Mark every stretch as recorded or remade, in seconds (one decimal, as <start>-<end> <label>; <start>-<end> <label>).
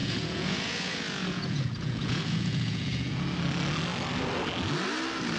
0.0-3.2 remade; 3.2-5.4 recorded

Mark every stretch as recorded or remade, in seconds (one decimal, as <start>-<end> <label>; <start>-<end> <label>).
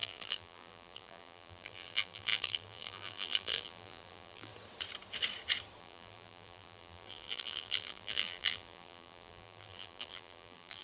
0.0-4.5 remade; 4.5-5.8 recorded; 5.8-10.8 remade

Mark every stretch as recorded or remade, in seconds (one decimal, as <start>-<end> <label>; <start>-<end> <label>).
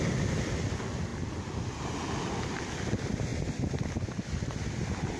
0.0-5.2 recorded